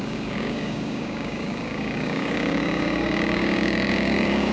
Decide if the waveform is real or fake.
fake